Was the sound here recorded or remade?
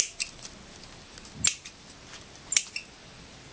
recorded